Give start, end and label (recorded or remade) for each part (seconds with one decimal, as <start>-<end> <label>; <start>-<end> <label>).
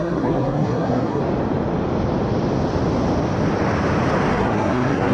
0.0-1.2 remade; 1.2-4.3 recorded; 4.3-5.1 remade